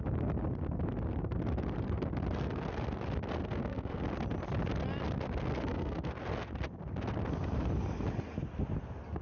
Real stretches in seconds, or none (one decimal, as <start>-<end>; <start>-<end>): 0.0-3.4; 4.0-5.5; 6.1-9.2